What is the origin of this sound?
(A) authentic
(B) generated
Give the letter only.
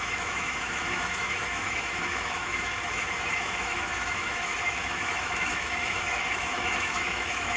B